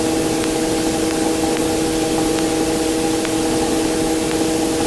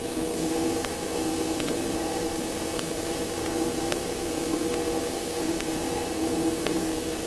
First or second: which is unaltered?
first